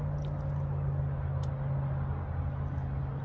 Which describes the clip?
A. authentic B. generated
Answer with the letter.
A